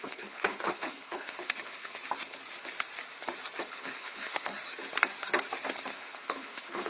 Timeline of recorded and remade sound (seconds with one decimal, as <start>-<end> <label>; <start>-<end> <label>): 0.0-2.0 remade; 2.0-3.6 recorded; 3.6-4.5 remade; 4.5-5.9 recorded; 5.9-6.9 remade

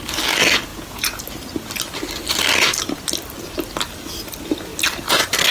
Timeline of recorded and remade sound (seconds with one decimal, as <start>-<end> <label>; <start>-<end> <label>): 0.0-0.7 recorded; 0.7-1.2 remade; 1.2-5.5 recorded

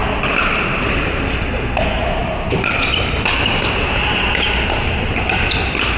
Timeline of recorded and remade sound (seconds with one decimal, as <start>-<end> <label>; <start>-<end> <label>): 0.0-6.0 recorded

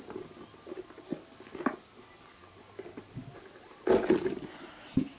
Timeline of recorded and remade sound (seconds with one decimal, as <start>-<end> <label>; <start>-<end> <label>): 0.0-2.4 recorded; 2.4-4.3 remade; 4.3-5.2 recorded